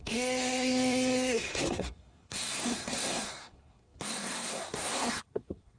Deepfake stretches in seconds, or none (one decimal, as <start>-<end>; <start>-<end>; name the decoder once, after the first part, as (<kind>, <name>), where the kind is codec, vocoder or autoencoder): 0.0-5.8 (codec, SNAC)